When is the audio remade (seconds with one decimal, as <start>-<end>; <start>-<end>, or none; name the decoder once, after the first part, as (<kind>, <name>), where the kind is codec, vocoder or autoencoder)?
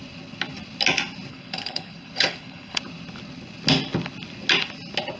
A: 1.3-2.8 (codec, HILCodec)